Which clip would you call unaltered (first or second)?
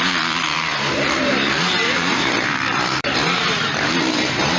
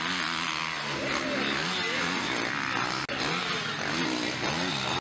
second